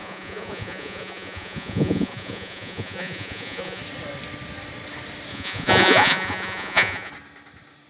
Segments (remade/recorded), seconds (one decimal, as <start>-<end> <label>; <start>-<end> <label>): 0.0-3.8 remade; 3.8-5.3 recorded; 5.3-7.1 remade; 7.1-7.9 recorded